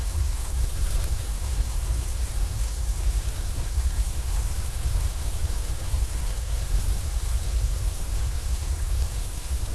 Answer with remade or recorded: remade